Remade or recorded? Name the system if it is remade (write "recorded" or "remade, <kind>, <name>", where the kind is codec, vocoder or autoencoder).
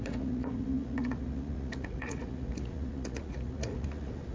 remade, vocoder, Vocos